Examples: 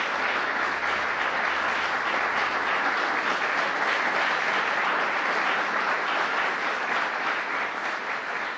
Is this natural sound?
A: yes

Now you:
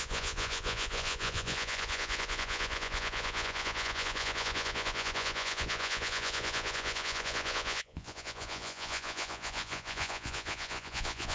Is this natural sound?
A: no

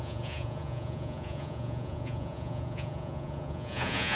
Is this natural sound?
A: no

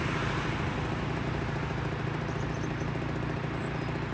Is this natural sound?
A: yes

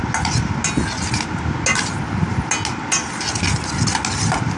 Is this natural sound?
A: yes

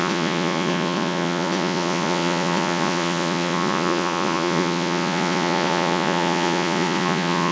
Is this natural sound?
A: no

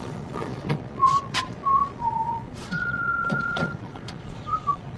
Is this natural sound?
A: no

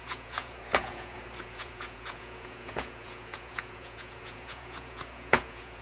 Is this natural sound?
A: no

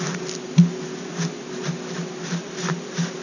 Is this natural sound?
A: yes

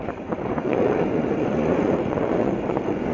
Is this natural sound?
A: no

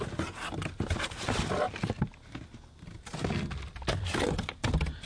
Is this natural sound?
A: yes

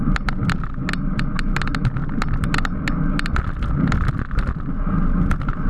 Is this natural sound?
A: yes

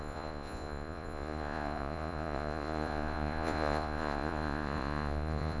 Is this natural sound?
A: no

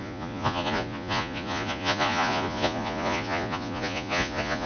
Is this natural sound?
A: no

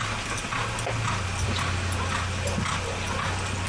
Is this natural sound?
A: yes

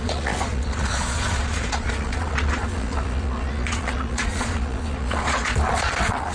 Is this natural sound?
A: no